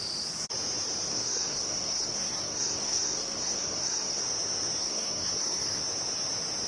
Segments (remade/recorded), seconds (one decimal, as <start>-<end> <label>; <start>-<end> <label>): 0.0-1.1 recorded; 1.1-4.2 remade; 4.2-4.8 recorded; 4.8-5.8 remade; 5.8-6.7 recorded